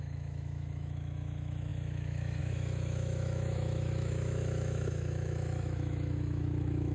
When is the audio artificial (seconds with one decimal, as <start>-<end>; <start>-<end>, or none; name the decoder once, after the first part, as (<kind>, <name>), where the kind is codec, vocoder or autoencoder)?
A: 0.0-6.9 (autoencoder, DAC-VAE)